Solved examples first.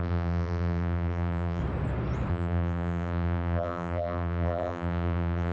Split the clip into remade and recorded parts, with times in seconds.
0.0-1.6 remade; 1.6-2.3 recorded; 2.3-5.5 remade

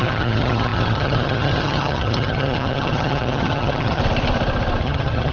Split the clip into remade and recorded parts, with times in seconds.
0.0-4.0 remade; 4.0-4.8 recorded; 4.8-5.3 remade

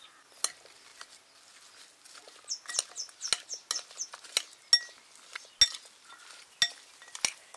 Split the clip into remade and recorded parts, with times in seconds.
0.0-7.6 recorded

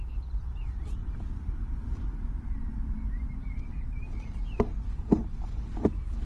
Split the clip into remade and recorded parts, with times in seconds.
0.0-1.0 recorded; 1.0-4.8 remade; 4.8-6.3 recorded

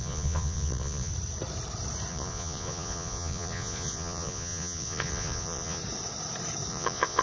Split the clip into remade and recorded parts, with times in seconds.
0.0-1.1 remade; 1.1-2.1 recorded; 2.1-5.8 remade; 5.8-6.7 recorded; 6.7-7.2 remade

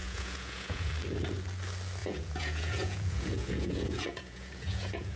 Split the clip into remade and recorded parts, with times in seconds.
0.0-0.9 remade; 0.9-2.0 recorded; 2.0-5.2 remade